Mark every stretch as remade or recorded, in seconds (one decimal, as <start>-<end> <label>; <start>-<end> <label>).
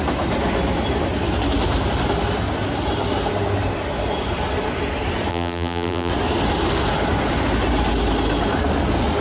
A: 0.0-5.3 recorded; 5.3-6.1 remade; 6.1-9.2 recorded